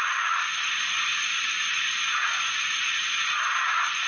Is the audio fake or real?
fake